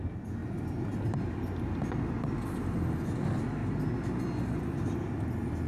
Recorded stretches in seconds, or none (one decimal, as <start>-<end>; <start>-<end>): 0.0-5.7